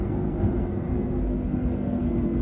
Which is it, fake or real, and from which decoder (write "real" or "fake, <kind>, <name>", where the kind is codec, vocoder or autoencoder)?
fake, codec, SNAC